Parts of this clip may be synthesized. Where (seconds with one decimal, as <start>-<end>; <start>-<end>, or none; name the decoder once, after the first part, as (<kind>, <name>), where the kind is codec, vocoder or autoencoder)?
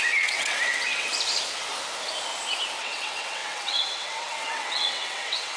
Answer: 0.0-1.1 (vocoder, WaveNeXt); 2.8-5.6